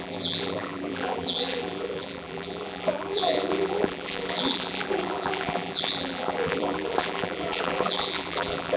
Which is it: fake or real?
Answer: fake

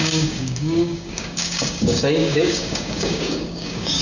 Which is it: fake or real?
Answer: fake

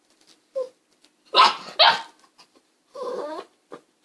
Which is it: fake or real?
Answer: real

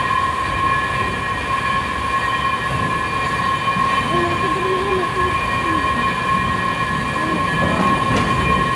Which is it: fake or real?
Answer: real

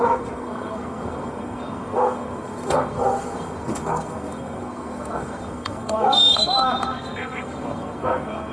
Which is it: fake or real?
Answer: fake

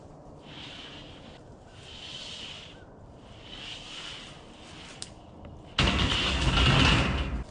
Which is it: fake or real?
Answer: real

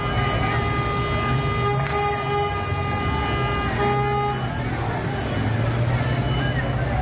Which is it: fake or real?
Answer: real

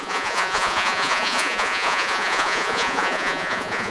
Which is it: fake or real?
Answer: fake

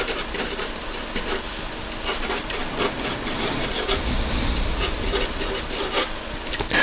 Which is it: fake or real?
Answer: real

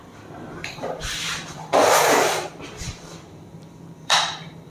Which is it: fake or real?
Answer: fake